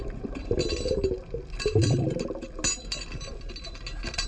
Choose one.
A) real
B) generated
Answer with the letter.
A